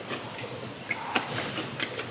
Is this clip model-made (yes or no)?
no